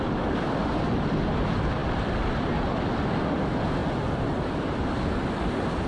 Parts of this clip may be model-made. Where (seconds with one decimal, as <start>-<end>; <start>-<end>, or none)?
none